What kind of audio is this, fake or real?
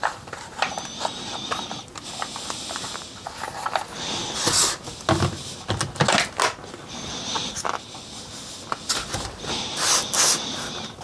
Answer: real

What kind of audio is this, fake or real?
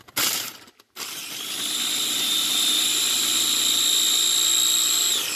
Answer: real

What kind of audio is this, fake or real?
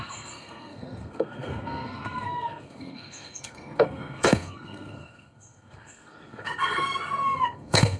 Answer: fake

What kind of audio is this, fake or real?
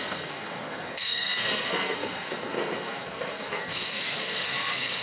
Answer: fake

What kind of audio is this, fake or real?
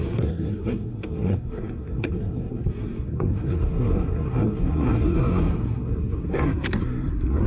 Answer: fake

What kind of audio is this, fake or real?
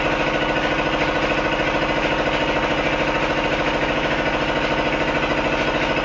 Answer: real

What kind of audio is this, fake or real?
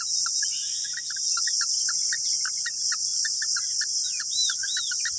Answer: real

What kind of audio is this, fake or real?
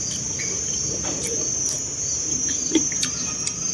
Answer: real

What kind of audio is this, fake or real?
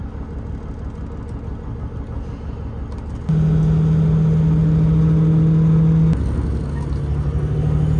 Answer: real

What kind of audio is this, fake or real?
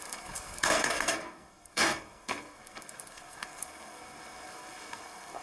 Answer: fake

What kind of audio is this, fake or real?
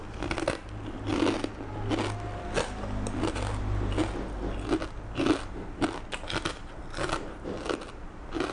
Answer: real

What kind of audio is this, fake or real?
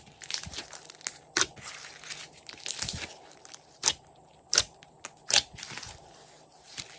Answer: real